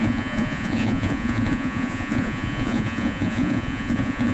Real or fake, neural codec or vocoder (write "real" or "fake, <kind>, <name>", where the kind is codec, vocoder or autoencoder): fake, vocoder, Vocos